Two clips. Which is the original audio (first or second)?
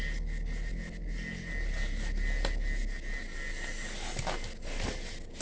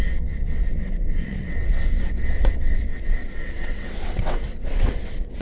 first